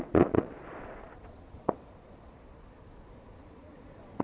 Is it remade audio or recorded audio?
remade